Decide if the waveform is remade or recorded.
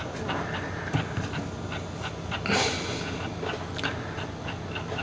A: recorded